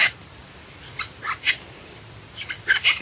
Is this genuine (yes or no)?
yes